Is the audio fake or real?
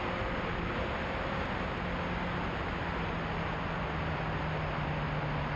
real